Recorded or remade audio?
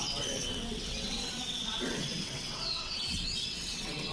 remade